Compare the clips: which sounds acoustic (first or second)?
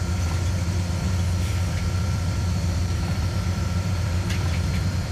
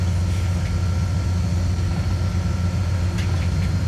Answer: second